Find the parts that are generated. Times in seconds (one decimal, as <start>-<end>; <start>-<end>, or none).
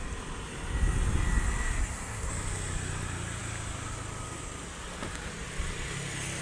1.8-2.3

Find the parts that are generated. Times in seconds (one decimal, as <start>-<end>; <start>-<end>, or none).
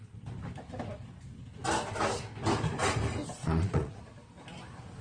3.4-4.0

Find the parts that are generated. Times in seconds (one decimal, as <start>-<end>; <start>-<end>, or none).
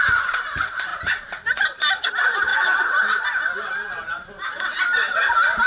0.0-5.7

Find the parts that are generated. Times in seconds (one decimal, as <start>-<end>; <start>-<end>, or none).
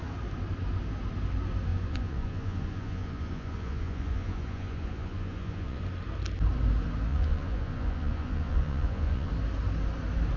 1.7-5.8; 7.1-9.3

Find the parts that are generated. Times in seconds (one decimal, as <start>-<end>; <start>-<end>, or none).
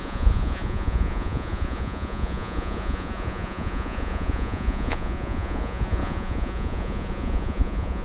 0.0-8.0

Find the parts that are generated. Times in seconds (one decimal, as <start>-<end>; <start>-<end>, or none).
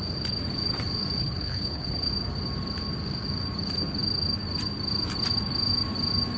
1.2-2.1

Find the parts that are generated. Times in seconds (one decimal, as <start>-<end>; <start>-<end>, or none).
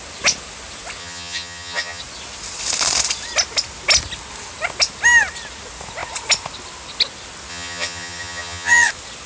1.0-2.0; 7.5-8.9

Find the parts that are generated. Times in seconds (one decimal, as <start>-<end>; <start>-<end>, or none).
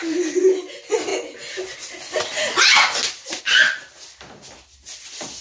none